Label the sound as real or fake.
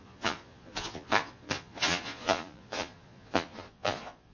fake